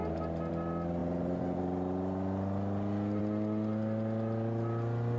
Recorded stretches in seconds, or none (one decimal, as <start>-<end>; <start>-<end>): 0.0-5.2